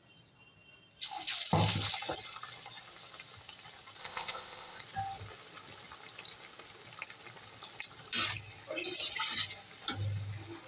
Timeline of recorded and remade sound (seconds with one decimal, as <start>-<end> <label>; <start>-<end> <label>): 0.0-4.0 recorded; 4.0-4.8 remade; 4.8-10.7 recorded